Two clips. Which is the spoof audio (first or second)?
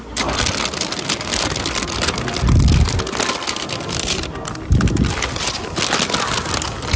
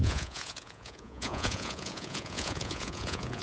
second